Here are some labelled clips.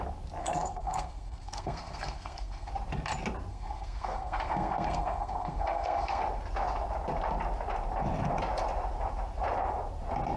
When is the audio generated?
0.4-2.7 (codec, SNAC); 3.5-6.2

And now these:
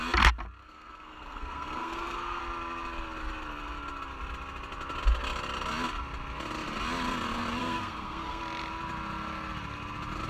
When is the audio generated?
0.6-2.4 (codec, SNAC); 7.6-8.4

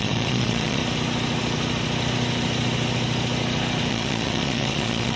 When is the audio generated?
0.0-0.8 (vocoder, Vocos); 3.9-5.2

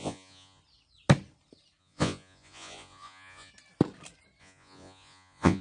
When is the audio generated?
0.0-0.6 (vocoder, Vocos); 1.8-3.5; 4.4-5.6

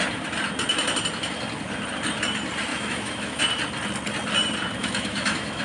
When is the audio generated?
2.7-3.4 (autoencoder, DAC-VAE); 4.8-5.6

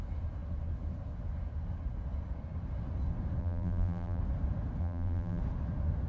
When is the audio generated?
3.4-4.2 (vocoder, BigVGAN v2); 4.8-5.4